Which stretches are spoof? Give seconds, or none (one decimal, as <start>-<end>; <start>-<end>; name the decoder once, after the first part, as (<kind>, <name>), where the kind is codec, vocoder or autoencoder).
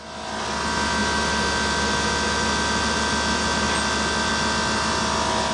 none